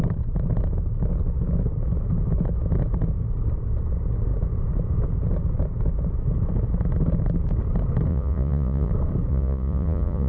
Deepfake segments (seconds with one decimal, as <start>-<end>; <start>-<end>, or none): 8.1-8.9; 9.3-10.3